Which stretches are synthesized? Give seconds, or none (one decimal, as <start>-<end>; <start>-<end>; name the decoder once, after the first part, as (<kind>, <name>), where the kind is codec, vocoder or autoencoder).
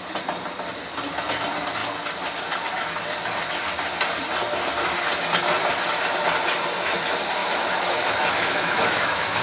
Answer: 7.4-9.4 (autoencoder, DAC-VAE)